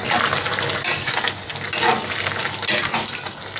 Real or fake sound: real